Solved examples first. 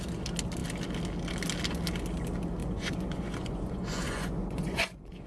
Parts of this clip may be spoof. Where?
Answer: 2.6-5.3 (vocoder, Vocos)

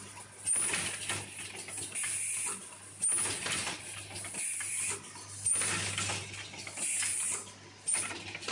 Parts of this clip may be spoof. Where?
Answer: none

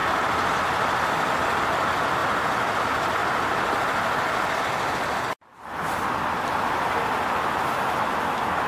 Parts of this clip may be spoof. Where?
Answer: 0.0-0.6 (vocoder, BigVGAN v2); 2.2-2.8; 3.2-5.1

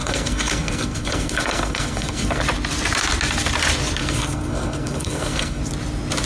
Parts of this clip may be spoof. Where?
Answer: 0.0-2.4 (codec, SNAC); 4.0-5.6

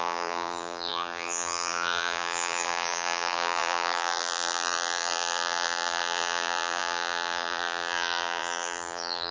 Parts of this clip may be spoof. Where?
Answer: 0.0-9.3 (vocoder, BigVGAN v2)

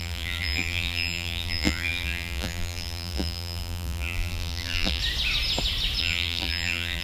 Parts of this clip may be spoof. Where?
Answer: 0.0-5.0 (vocoder, BigVGAN v2); 6.0-7.0

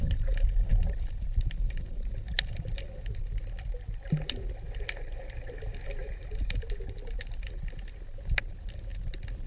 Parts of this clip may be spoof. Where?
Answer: 6.0-6.6 (vocoder, BigVGAN v2)